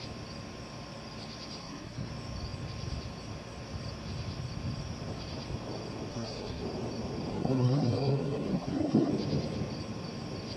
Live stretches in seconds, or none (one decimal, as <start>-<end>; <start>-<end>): 0.0-1.6; 2.1-6.1; 6.6-7.3; 9.1-10.6